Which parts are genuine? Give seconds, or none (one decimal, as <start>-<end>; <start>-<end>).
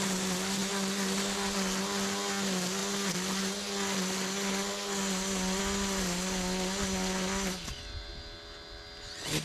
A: 0.0-9.4